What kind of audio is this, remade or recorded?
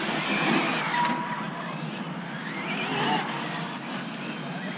recorded